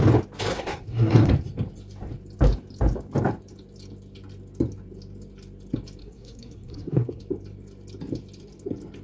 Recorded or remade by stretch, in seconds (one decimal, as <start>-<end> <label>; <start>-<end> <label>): 0.0-0.5 recorded; 0.5-1.3 remade; 1.3-6.0 recorded; 6.0-7.2 remade; 7.2-9.0 recorded